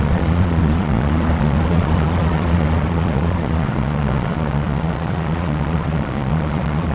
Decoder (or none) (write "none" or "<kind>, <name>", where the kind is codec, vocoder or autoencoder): vocoder, Vocos